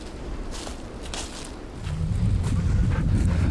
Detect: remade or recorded recorded